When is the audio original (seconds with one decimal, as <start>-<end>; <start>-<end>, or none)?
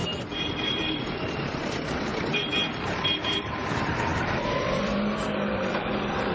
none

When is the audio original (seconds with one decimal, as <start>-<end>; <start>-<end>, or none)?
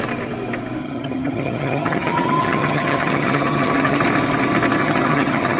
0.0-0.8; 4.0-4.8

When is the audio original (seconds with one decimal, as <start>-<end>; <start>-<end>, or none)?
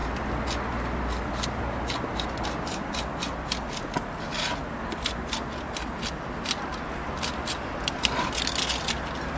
0.0-9.4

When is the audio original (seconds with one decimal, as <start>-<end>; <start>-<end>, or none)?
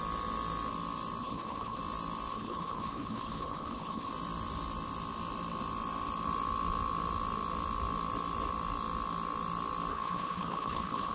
0.0-1.2; 1.8-2.3; 4.1-9.9